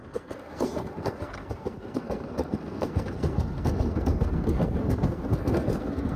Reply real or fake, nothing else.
fake